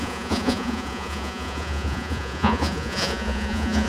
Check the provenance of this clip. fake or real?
fake